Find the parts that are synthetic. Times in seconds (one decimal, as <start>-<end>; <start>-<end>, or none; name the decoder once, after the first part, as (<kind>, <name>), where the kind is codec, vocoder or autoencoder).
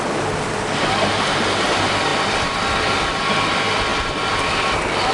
none